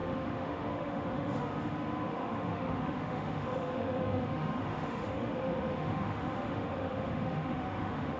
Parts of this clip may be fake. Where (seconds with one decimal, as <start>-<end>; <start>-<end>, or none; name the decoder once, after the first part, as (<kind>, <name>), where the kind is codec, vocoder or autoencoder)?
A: 0.0-1.5 (autoencoder, DAC-VAE); 2.1-8.2